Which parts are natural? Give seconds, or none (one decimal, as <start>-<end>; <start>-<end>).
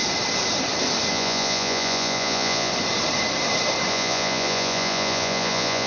0.0-1.1; 2.7-3.9